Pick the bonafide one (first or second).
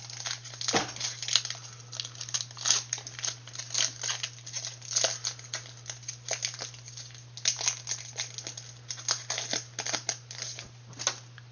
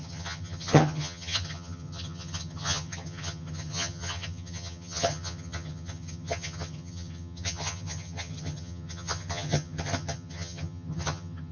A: first